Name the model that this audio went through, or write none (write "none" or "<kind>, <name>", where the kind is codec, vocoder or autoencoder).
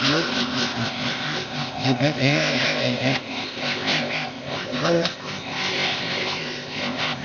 codec, ZipCodec